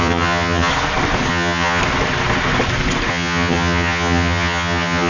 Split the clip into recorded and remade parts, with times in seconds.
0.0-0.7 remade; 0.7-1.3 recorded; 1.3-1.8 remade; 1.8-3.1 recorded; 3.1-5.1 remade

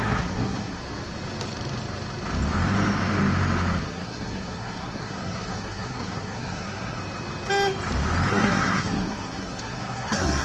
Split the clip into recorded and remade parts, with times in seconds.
0.0-0.8 remade; 0.8-3.8 recorded; 3.8-7.0 remade; 7.0-8.3 recorded; 8.3-10.4 remade

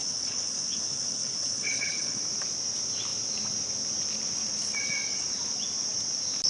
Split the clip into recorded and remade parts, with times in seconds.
0.0-2.2 remade; 2.2-6.5 recorded

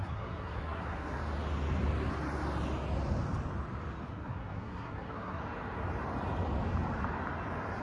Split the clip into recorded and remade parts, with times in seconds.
0.0-1.2 remade; 1.2-4.1 recorded; 4.1-5.4 remade; 5.4-7.8 recorded